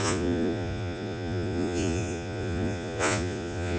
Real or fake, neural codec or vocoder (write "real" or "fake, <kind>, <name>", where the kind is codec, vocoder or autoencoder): fake, vocoder, Vocos